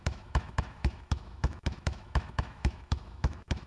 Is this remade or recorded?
remade